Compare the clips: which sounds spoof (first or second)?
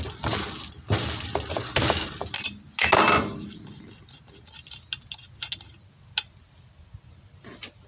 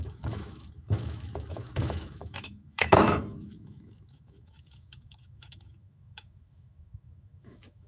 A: second